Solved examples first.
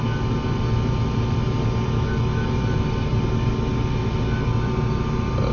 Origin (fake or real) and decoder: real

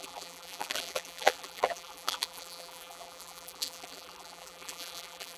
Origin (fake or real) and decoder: fake, vocoder, BigVGAN v2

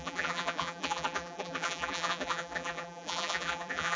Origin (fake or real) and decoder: fake, vocoder, BigVGAN v2